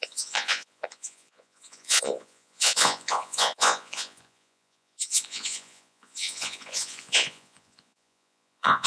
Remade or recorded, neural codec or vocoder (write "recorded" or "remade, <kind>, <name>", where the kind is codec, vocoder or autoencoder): remade, vocoder, Vocos